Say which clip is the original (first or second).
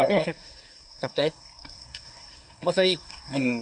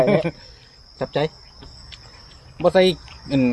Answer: second